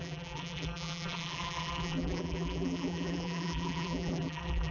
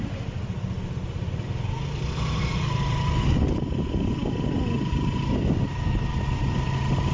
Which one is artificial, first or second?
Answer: first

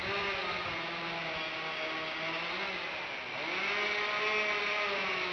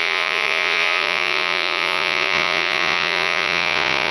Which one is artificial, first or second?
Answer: second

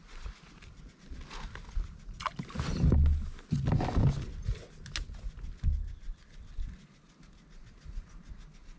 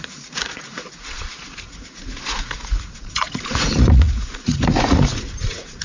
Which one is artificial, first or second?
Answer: second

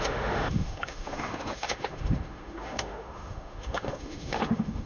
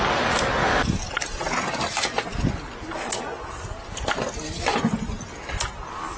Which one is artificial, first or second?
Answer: first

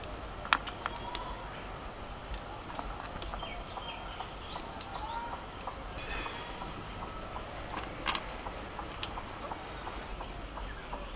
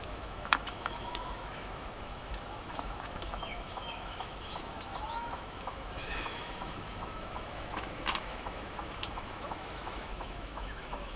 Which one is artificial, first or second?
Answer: second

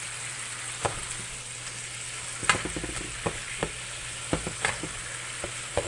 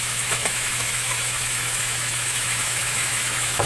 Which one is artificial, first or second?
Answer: second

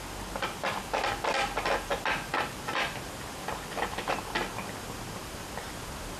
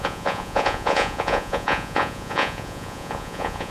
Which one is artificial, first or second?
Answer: second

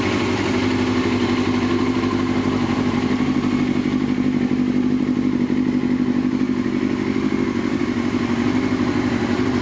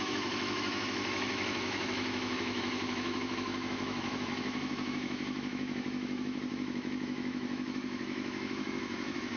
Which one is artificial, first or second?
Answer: second